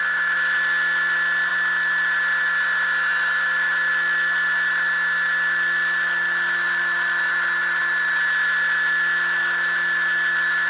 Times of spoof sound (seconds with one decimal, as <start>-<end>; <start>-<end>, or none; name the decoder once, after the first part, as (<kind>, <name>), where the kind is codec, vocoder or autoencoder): none